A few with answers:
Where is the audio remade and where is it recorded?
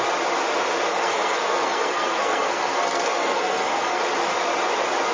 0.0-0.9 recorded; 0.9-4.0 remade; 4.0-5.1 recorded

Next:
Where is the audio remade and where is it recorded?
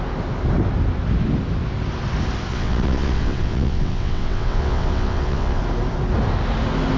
0.0-2.5 recorded; 2.5-5.6 remade; 5.6-7.0 recorded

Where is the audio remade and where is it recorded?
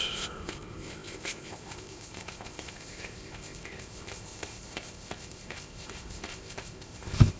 0.0-7.4 remade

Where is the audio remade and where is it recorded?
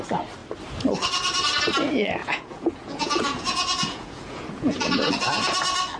0.0-2.2 recorded; 2.2-5.1 remade; 5.1-6.0 recorded